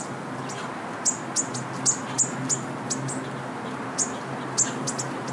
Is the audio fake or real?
real